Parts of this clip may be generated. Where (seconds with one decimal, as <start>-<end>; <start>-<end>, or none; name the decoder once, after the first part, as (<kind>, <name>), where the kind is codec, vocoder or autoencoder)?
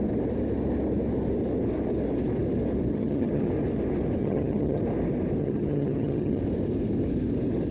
2.9-3.5 (vocoder, HiFi-GAN); 4.2-4.8; 5.4-6.4